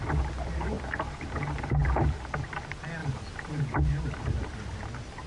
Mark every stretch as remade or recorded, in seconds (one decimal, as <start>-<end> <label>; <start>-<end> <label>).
0.0-3.0 recorded; 3.0-3.6 remade; 3.6-5.3 recorded

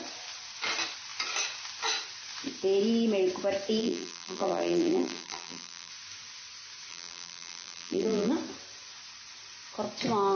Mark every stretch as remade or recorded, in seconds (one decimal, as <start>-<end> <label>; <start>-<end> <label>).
0.0-3.8 recorded; 3.8-5.9 remade; 5.9-6.9 recorded; 6.9-8.3 remade; 8.3-10.4 recorded